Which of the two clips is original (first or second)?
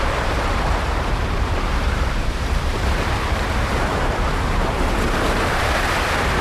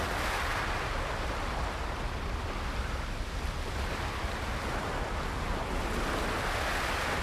second